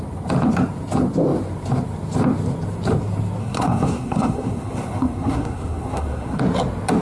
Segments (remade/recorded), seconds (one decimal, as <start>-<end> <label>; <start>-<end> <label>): 0.0-3.4 recorded; 3.4-6.4 remade; 6.4-7.0 recorded